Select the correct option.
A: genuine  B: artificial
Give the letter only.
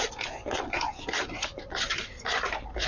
A